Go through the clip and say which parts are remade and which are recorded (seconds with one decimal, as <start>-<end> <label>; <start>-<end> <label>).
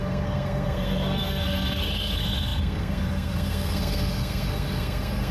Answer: 0.0-5.3 remade